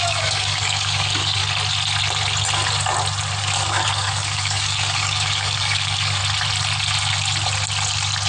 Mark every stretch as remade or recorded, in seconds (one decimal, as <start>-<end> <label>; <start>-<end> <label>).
0.0-1.4 remade; 1.4-3.4 recorded; 3.4-6.2 remade; 6.2-8.3 recorded